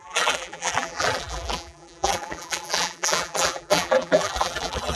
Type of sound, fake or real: fake